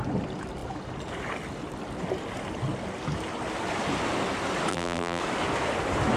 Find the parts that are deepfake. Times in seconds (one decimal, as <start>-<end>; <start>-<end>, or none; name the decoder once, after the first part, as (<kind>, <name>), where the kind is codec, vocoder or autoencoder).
4.7-5.2 (vocoder, BigVGAN v2)